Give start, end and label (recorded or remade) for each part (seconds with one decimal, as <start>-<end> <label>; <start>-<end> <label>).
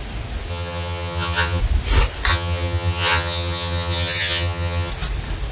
0.0-0.5 recorded; 0.5-1.6 remade; 1.6-2.3 recorded; 2.3-4.9 remade; 4.9-5.5 recorded